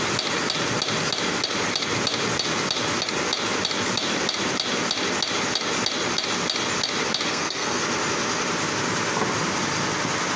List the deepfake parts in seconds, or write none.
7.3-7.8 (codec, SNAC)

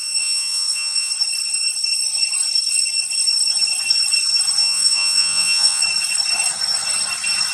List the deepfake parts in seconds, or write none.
0.0-1.1 (vocoder, Vocos); 4.6-5.8

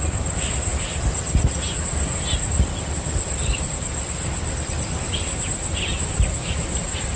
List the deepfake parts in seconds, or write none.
none

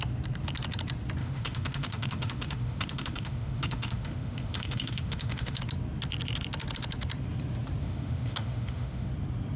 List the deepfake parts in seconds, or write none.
1.2-5.6 (autoencoder, DAC-VAE); 7.8-9.1

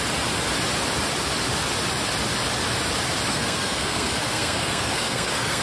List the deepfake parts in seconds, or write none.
3.3-5.6 (codec, SNAC)

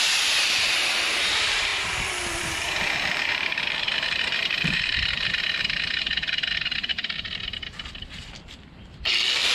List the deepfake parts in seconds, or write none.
0.0-9.5 (vocoder, BigVGAN v2)